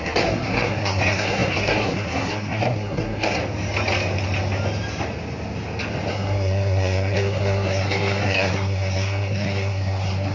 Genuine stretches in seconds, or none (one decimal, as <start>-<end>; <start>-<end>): 3.4-6.1